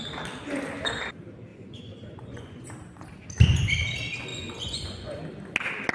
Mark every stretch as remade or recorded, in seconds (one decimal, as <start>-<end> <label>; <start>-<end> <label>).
0.0-1.5 recorded; 1.5-2.7 remade; 2.7-4.3 recorded; 4.3-5.2 remade; 5.2-5.9 recorded